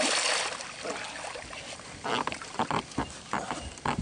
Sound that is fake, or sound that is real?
real